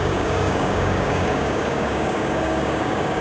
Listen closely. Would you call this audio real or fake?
fake